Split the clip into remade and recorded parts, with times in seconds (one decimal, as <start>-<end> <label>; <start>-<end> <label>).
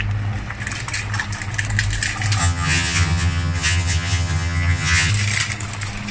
0.0-2.4 recorded; 2.4-5.1 remade; 5.1-6.1 recorded